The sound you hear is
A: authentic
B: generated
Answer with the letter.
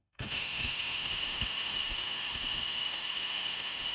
B